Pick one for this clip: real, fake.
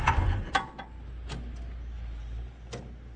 real